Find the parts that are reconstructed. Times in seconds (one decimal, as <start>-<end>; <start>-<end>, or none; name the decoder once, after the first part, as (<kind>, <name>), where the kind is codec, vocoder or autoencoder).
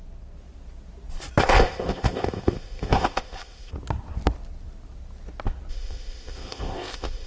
1.4-3.7 (codec, ZipCodec); 5.7-7.3